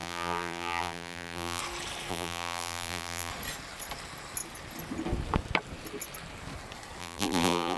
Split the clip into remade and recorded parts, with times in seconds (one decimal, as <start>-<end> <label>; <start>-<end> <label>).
0.0-1.6 remade; 1.6-2.1 recorded; 2.1-3.3 remade; 3.3-7.0 recorded; 7.0-7.8 remade